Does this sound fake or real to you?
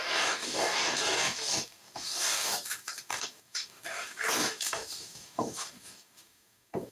fake